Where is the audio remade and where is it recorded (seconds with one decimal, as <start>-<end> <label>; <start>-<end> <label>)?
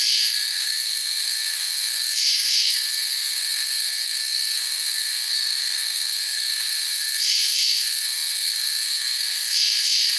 0.0-10.2 remade